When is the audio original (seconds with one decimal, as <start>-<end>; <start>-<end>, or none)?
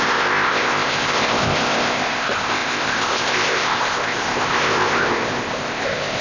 none